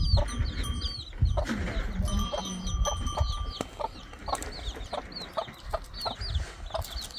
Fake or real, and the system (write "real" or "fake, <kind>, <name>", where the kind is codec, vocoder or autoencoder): real